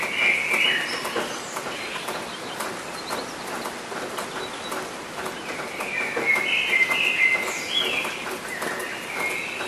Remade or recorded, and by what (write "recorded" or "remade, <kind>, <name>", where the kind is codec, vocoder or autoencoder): recorded